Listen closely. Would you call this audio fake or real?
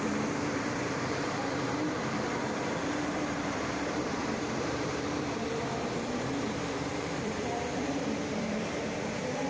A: fake